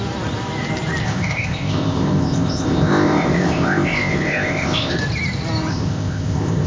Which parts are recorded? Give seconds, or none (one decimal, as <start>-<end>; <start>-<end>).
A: 0.0-1.0; 5.0-5.7